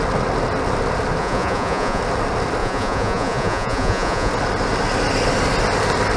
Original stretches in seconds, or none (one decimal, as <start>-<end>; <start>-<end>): 0.0-1.2; 2.0-2.6; 4.3-6.2

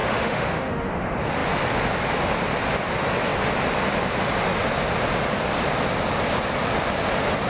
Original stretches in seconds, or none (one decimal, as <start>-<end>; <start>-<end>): 0.9-7.5

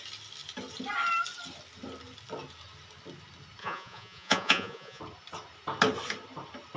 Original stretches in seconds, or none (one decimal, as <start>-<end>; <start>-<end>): 0.0-3.6; 5.0-6.8

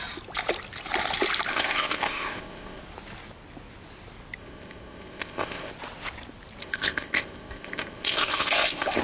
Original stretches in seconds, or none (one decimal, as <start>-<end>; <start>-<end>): 0.0-1.5; 2.8-4.4; 5.7-6.6

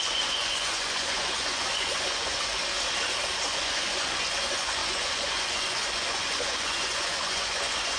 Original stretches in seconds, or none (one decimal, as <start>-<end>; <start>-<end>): 2.6-3.5

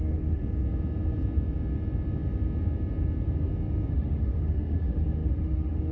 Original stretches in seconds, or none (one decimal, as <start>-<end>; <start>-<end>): 0.4-3.9